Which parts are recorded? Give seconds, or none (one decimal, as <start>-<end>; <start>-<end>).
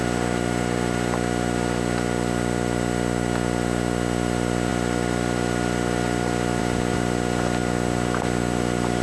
0.0-9.0